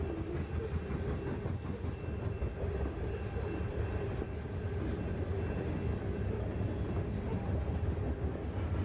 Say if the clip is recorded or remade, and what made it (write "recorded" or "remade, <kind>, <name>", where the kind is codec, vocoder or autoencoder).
recorded